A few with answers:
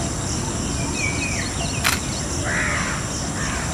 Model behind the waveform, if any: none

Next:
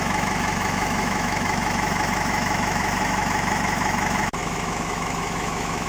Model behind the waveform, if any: autoencoder, DAC-VAE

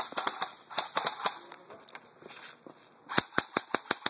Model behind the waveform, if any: none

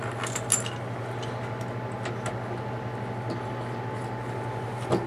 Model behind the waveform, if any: none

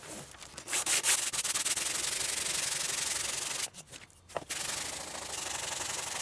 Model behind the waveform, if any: none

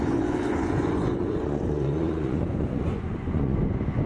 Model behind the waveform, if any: vocoder, Vocos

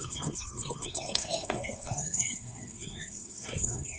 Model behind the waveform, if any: codec, SNAC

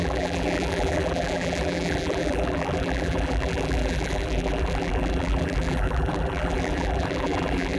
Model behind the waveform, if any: vocoder, BigVGAN v2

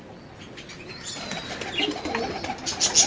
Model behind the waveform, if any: none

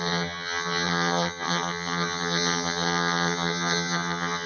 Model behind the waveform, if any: vocoder, HiFi-GAN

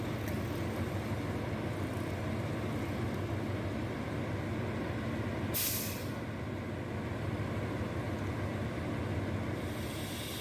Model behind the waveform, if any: none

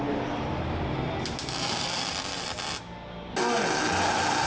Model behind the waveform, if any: none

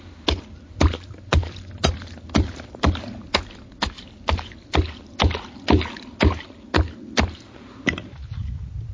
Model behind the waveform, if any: none